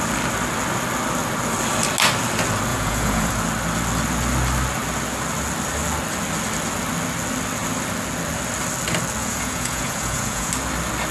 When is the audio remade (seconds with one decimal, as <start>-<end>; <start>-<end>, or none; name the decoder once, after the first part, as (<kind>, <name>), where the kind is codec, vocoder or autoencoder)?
2.7-3.3 (vocoder, Vocos); 9.2-10.5